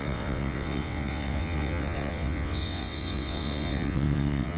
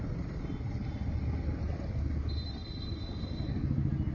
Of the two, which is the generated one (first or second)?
first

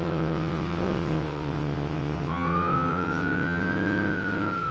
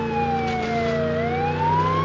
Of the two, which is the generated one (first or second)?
first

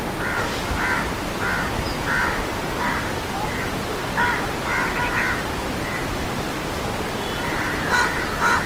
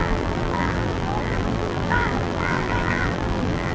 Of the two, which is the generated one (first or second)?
second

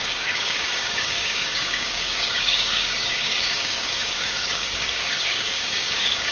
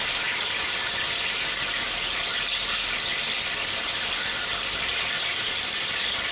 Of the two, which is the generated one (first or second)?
first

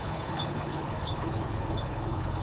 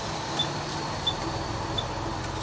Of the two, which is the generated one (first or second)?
first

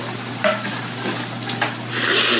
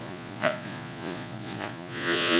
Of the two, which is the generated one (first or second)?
second